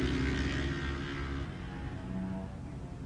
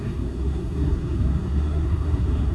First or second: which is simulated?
second